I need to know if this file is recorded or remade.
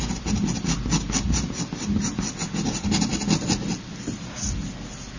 recorded